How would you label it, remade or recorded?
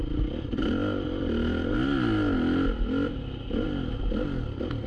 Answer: recorded